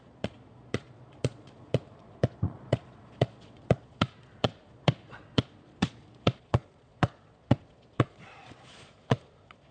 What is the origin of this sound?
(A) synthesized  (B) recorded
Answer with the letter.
A